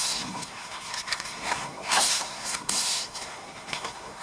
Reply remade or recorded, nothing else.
remade